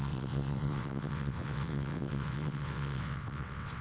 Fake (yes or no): yes